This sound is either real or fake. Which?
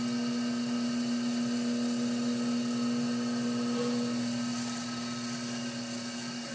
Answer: real